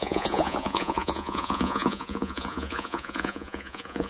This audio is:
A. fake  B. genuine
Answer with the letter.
A